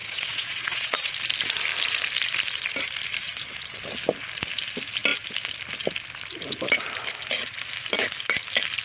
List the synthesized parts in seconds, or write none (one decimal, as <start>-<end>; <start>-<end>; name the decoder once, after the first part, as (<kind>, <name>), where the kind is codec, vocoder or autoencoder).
0.0-1.1 (vocoder, Vocos)